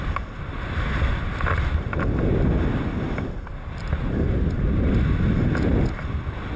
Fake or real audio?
real